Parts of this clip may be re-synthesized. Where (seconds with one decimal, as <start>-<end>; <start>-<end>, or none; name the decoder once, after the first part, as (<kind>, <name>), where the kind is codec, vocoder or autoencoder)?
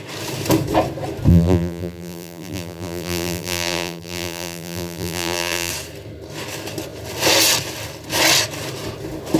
1.3-5.7 (vocoder, BigVGAN v2)